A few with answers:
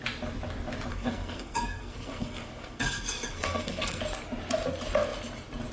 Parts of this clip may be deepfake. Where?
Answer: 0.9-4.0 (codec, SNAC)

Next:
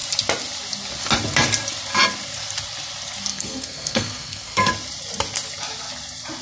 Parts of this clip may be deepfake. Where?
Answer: 3.3-4.7 (codec, SNAC)

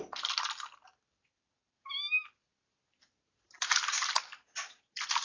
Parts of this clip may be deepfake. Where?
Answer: none

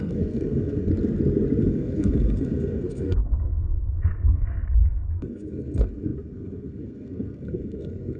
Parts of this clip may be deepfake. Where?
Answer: 0.0-0.9 (codec, SNAC); 1.6-8.2

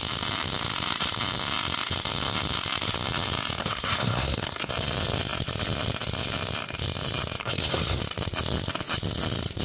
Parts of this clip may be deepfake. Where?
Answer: 3.6-4.7 (codec, SNAC); 7.4-8.0

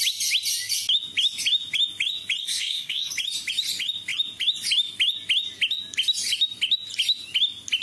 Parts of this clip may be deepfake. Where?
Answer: 2.4-3.1 (codec, SNAC)

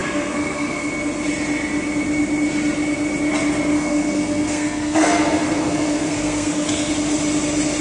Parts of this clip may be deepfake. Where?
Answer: 0.0-0.9 (codec, SNAC); 3.7-6.9

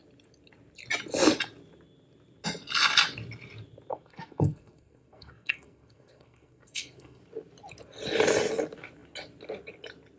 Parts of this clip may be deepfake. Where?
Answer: 3.9-7.2 (codec, SNAC)